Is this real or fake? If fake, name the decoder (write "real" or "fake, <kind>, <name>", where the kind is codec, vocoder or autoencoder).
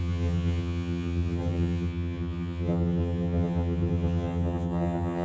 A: fake, vocoder, HiFi-GAN